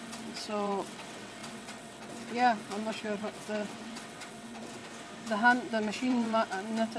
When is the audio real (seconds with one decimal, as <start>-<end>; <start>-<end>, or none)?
4.8-5.7